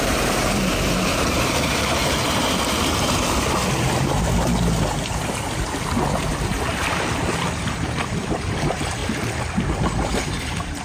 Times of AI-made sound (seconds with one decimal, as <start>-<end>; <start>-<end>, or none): 0.0-2.0; 6.3-6.7; 7.2-9.0; 9.7-10.8